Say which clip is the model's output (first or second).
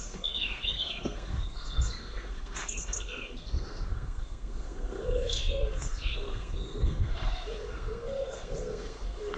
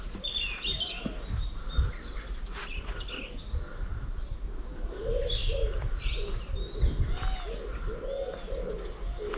first